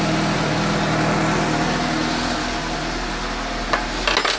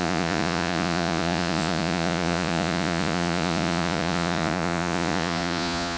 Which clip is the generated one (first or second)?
second